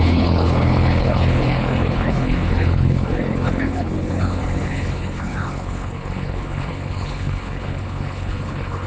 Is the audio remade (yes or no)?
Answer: yes